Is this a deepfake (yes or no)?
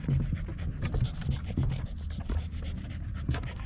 no